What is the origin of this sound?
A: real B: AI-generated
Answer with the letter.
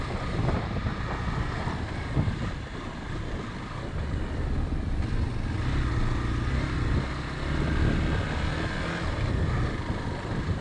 A